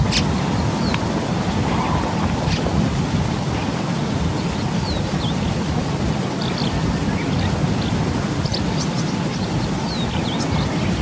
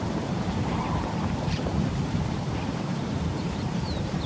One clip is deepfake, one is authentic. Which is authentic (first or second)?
first